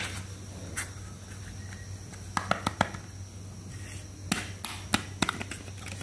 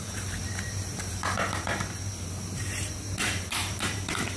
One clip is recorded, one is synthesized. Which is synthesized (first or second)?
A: second